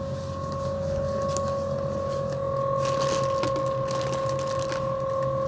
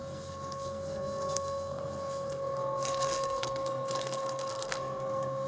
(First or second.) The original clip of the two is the first